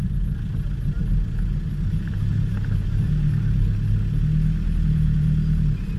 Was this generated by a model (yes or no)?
no